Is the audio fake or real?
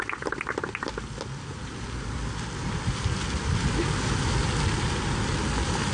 real